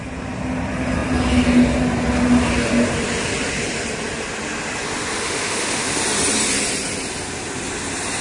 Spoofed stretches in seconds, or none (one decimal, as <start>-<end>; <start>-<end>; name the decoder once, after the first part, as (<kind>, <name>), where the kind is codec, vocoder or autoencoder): 5.2-6.0 (autoencoder, DAC-VAE)